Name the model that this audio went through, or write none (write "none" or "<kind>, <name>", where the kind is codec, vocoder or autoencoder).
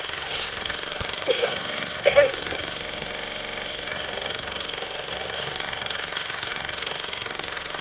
codec, SNAC